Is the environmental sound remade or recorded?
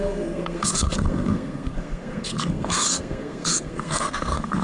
remade